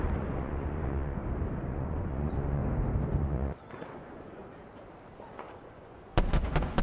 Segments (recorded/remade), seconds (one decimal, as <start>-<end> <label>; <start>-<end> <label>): 0.0-1.2 remade; 1.2-1.7 recorded; 1.7-2.6 remade; 2.6-3.2 recorded; 3.2-4.4 remade; 4.4-5.3 recorded; 5.3-6.8 remade